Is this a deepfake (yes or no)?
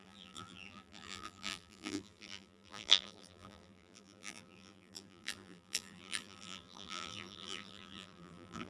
yes